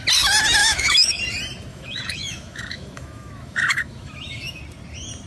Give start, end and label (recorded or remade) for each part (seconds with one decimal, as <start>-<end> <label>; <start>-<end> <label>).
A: 0.0-0.6 recorded; 0.6-1.2 remade; 1.2-1.7 recorded; 1.7-4.6 remade; 4.6-5.3 recorded